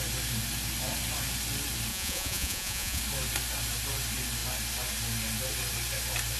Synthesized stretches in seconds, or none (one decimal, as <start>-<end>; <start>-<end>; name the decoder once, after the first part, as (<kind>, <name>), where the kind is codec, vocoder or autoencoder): 1.9-3.0 (vocoder, Vocos)